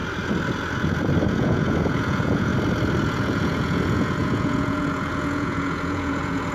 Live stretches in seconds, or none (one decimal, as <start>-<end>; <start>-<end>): 0.0-1.3; 2.5-3.1